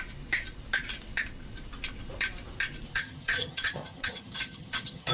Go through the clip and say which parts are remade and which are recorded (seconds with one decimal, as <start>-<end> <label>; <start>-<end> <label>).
0.0-2.9 recorded; 2.9-5.1 remade